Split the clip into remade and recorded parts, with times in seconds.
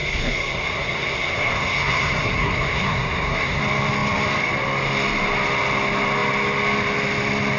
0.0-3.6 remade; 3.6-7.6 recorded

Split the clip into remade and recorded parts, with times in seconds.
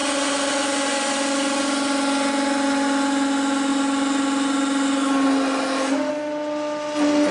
0.0-7.3 recorded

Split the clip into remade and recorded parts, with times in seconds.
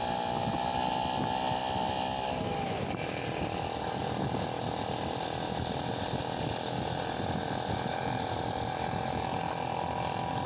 0.0-10.5 recorded